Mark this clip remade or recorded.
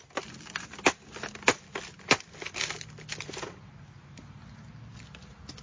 recorded